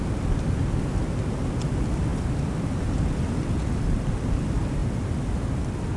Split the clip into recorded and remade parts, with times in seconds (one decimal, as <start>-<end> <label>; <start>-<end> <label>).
0.0-6.0 recorded